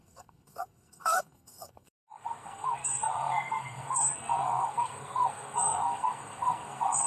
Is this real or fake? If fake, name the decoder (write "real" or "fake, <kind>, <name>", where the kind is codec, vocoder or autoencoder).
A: fake, codec, SNAC